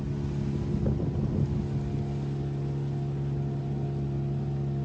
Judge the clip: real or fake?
real